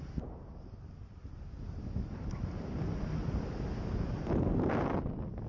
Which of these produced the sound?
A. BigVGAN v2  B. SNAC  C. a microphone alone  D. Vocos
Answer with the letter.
C